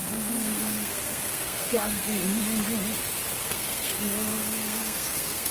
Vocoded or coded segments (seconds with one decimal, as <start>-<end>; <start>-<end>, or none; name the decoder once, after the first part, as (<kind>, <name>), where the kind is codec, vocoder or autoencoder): 0.0-2.4 (codec, SNAC); 3.4-5.5